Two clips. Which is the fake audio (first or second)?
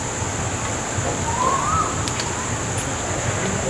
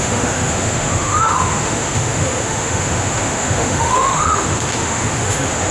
second